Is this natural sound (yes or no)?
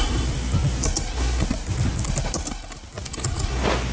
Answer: yes